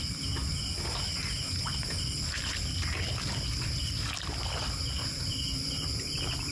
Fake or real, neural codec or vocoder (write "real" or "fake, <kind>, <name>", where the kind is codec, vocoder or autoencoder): real